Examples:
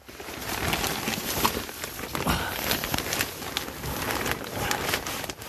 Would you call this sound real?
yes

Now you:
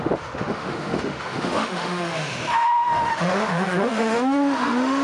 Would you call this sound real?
no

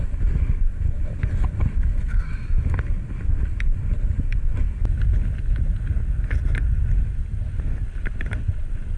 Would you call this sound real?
yes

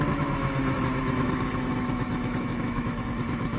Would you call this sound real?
no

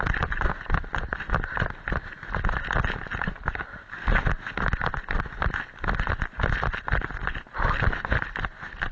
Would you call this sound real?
yes